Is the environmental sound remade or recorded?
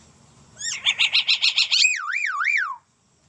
remade